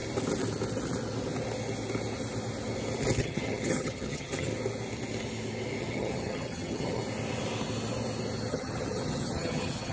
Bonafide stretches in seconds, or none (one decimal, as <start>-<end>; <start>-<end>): 0.0-3.2; 4.5-5.8; 7.0-8.5